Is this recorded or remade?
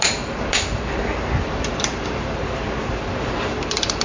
remade